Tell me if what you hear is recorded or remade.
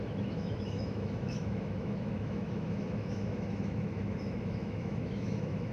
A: remade